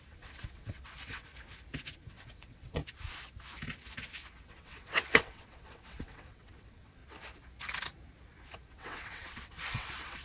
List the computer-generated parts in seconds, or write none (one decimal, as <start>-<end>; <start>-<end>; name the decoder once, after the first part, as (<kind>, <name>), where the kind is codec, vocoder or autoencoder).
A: 0.0-1.3 (vocoder, WaveNeXt); 2.1-2.8; 4.4-7.0; 8.7-10.2